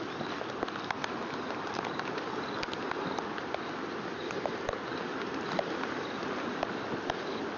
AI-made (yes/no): no